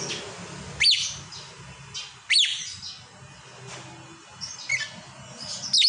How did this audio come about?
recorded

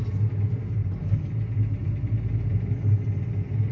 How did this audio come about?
recorded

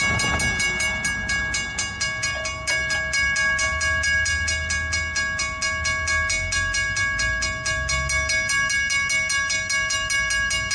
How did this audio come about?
recorded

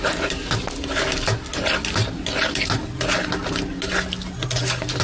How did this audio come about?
recorded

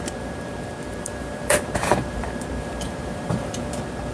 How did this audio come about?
remade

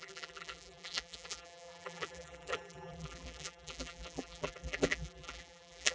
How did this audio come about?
remade